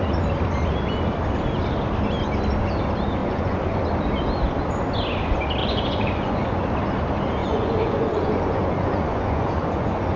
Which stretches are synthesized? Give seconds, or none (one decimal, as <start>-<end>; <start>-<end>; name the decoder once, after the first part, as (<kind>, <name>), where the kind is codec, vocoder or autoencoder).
3.2-3.8 (vocoder, Vocos); 5.6-6.6; 7.4-10.2